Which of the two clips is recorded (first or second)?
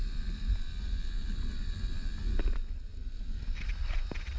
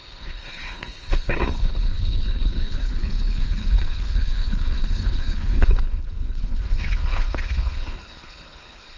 first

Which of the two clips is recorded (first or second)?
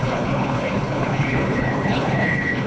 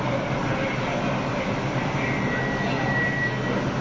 second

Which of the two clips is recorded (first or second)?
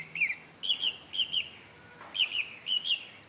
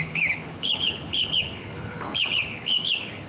first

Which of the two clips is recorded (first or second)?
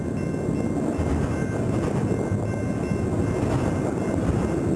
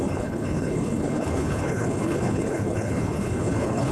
first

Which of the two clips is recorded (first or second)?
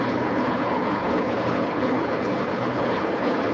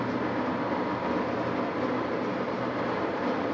second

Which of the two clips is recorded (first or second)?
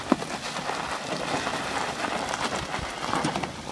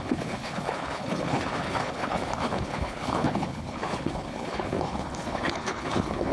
first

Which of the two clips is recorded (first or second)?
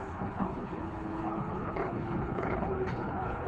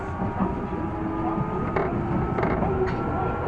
second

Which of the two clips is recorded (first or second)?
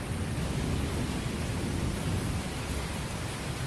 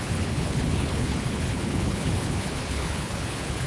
first